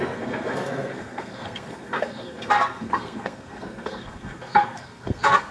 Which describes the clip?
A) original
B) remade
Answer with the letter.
B